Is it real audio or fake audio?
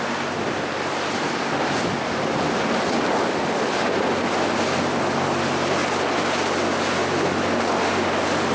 real